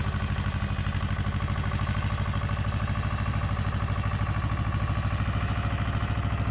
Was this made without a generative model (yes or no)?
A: yes